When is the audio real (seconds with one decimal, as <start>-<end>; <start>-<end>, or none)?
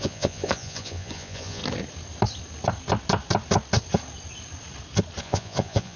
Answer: 1.6-5.2